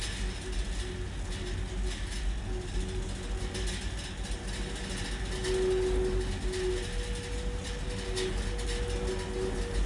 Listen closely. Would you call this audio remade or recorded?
recorded